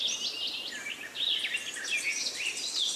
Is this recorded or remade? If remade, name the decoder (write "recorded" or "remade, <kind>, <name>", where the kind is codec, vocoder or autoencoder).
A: recorded